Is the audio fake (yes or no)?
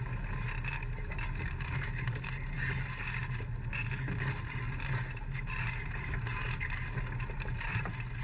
no